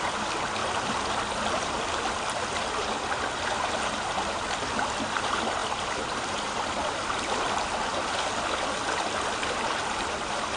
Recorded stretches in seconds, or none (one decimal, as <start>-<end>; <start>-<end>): 0.0-0.6; 3.7-5.6; 10.1-10.6